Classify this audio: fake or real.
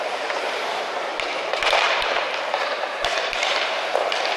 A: fake